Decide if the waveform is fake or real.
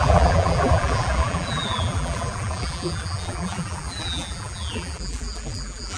fake